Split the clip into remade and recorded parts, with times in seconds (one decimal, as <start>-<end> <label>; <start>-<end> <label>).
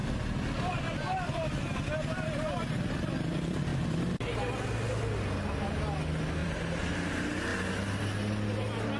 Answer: 0.0-6.4 recorded; 6.4-7.1 remade; 7.1-9.0 recorded